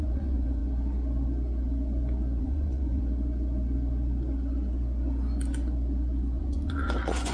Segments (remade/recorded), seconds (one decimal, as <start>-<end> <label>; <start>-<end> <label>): 0.0-0.6 remade; 0.6-2.4 recorded; 2.4-3.0 remade; 3.0-6.4 recorded; 6.4-7.3 remade